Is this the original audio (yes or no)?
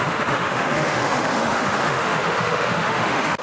no